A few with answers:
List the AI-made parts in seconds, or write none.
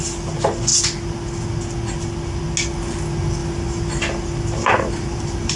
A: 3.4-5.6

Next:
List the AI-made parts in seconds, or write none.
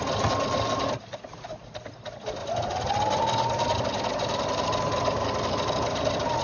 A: none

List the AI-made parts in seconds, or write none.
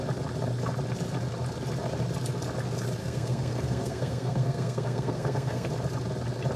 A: 3.0-5.7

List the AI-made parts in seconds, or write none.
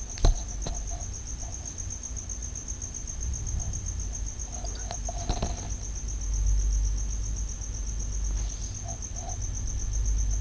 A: none